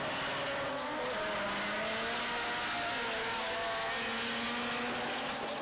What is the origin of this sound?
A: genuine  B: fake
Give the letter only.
A